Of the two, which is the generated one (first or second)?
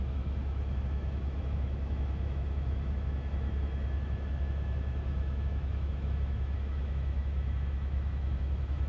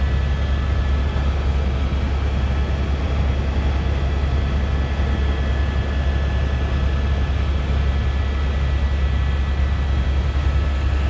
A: first